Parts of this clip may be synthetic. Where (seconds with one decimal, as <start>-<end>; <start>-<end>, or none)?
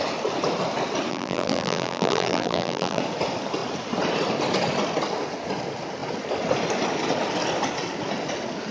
1.1-3.0